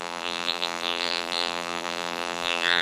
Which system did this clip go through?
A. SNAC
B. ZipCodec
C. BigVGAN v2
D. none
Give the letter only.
C